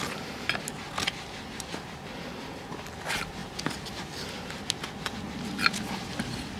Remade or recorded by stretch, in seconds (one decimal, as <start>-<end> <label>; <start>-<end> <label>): 0.0-6.6 recorded